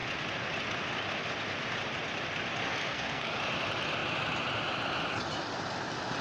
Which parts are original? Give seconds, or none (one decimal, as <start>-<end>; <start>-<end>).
0.0-2.7; 3.3-6.2